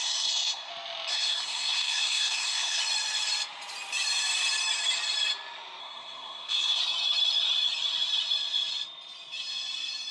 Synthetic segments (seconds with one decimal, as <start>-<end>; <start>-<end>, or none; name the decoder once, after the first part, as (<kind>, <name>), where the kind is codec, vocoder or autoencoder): 0.0-0.7 (codec, SNAC); 1.1-2.8; 5.8-6.8